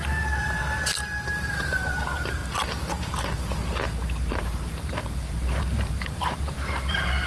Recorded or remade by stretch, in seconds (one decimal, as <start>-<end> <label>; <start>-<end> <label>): 0.0-2.4 remade; 2.4-4.3 recorded; 4.3-7.3 remade